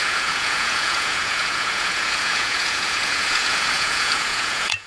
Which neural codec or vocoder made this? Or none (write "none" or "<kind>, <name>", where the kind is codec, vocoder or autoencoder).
vocoder, Vocos